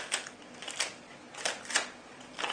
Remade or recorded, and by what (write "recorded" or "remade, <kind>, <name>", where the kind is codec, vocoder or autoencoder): recorded